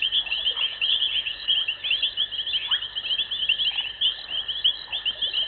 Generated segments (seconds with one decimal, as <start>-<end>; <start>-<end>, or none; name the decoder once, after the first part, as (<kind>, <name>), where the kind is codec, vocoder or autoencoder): 0.0-1.5 (vocoder, Vocos)